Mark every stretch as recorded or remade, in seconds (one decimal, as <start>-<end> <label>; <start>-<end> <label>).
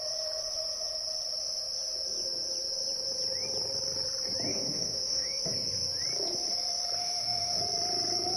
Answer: 0.0-4.5 recorded; 4.5-5.4 remade; 5.4-7.0 recorded; 7.0-7.6 remade; 7.6-8.4 recorded